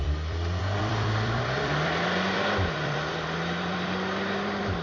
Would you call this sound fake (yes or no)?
yes